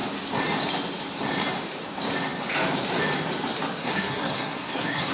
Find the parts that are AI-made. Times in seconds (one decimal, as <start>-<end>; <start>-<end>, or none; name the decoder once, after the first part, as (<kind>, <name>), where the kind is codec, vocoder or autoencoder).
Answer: 3.8-5.1 (codec, SNAC)